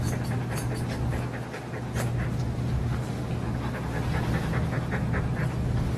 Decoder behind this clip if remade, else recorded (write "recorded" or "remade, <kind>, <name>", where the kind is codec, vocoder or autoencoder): recorded